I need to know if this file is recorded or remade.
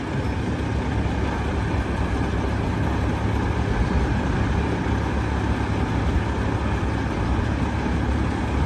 recorded